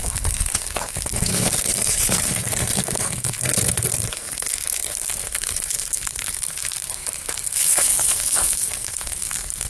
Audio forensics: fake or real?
fake